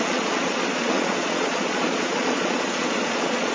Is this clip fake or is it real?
fake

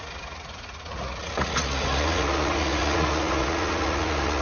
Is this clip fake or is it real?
fake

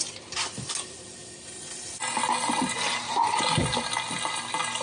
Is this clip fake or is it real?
real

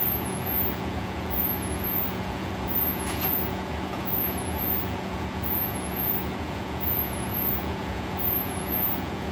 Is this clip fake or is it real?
fake